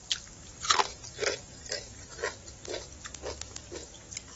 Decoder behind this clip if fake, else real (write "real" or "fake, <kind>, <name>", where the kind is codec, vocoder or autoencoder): real